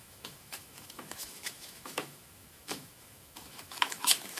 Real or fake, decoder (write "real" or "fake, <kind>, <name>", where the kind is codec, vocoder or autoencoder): fake, autoencoder, DAC-VAE